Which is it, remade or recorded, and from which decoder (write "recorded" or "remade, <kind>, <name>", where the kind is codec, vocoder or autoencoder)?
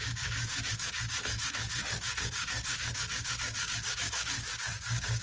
remade, codec, DAC